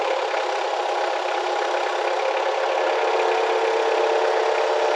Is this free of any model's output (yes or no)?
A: yes